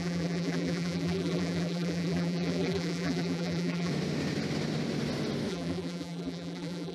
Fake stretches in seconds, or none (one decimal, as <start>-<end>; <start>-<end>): 0.0-3.9; 5.5-6.9